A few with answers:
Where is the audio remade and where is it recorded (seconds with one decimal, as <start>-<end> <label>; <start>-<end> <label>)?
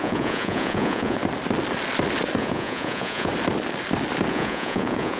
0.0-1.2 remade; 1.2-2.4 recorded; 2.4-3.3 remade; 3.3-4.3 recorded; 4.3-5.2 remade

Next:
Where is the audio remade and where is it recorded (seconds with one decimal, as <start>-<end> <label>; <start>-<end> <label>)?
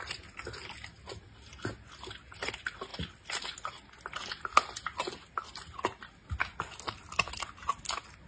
0.0-8.3 recorded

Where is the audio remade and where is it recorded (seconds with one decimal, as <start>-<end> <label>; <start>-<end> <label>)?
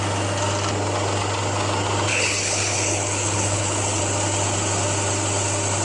0.0-2.1 recorded; 2.1-4.0 remade; 4.0-5.8 recorded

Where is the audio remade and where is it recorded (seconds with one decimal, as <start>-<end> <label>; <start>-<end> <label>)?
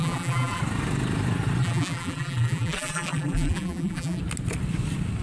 0.0-0.6 remade; 0.6-1.6 recorded; 1.6-4.2 remade; 4.2-5.2 recorded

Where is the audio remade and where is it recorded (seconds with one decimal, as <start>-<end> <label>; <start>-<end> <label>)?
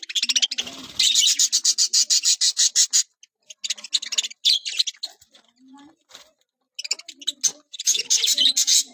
0.0-7.5 recorded; 7.5-8.4 remade; 8.4-8.9 recorded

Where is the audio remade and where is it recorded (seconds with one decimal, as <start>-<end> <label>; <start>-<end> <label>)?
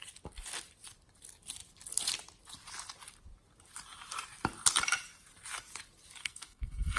0.0-6.2 recorded; 6.2-7.0 remade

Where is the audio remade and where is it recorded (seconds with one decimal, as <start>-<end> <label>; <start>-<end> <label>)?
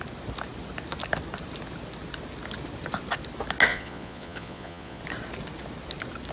0.0-3.7 recorded; 3.7-5.0 remade; 5.0-6.3 recorded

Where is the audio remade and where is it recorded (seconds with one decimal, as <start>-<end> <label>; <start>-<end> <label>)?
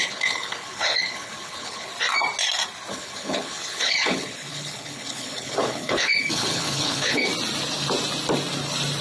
0.0-1.9 remade; 1.9-2.9 recorded; 2.9-7.3 remade; 7.3-9.0 recorded